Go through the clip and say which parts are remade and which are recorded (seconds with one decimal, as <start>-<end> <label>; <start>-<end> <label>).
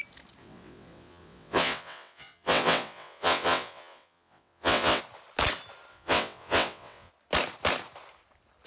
0.0-0.4 recorded; 0.4-5.0 remade; 5.0-5.9 recorded; 5.9-7.1 remade; 7.1-8.7 recorded